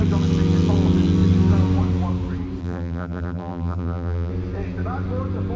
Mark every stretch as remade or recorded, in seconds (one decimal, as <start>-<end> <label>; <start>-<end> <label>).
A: 0.0-2.6 recorded; 2.6-4.3 remade; 4.3-5.6 recorded